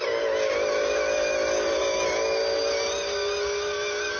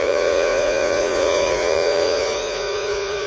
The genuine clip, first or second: first